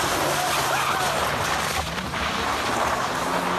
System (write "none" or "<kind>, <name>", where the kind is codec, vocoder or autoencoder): none